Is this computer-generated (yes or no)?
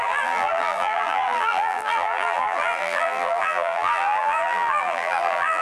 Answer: yes